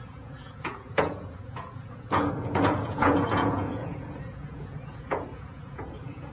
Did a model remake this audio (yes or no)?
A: yes